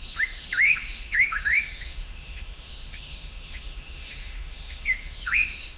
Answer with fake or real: fake